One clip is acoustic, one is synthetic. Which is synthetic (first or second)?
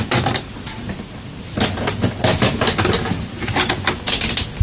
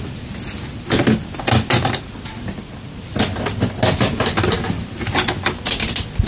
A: second